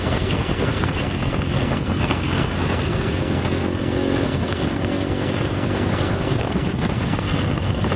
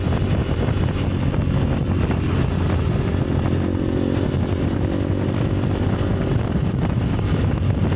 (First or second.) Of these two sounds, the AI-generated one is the first